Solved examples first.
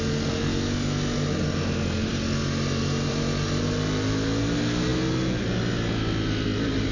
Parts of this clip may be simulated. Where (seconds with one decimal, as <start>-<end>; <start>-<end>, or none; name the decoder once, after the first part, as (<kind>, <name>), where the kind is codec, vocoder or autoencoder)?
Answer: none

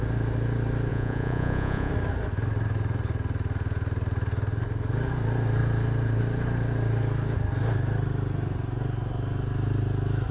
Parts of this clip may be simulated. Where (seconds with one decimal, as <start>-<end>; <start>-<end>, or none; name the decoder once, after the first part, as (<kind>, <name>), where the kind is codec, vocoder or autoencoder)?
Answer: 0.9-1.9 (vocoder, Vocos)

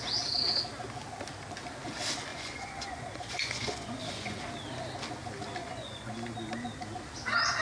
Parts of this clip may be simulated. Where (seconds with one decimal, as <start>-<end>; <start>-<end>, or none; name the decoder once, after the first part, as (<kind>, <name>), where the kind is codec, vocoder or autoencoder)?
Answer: 2.3-4.4 (vocoder, Vocos); 5.6-6.1

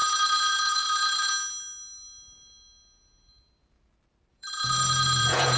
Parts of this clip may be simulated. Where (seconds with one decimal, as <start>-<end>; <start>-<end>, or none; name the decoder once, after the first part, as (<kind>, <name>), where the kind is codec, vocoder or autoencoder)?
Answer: 0.0-1.3 (vocoder, Vocos); 4.3-5.6

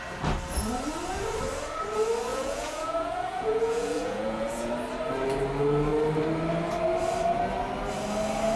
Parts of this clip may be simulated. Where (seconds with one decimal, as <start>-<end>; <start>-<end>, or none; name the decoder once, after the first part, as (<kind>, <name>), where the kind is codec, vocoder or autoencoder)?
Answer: 2.3-4.7 (vocoder, Vocos)

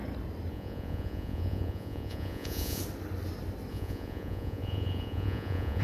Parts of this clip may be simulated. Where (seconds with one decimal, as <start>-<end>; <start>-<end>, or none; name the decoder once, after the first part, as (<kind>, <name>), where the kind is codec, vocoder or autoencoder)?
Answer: 0.5-2.8 (vocoder, Vocos); 3.7-5.8